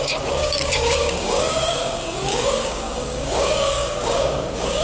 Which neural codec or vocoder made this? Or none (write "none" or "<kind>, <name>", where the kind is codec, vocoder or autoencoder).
codec, DAC